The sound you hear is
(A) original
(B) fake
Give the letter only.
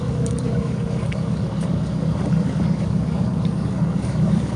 B